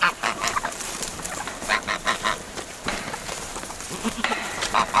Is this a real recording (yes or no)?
no